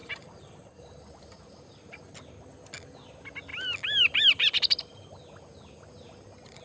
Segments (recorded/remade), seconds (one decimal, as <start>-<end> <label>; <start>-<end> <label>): 0.0-2.0 remade; 2.0-6.6 recorded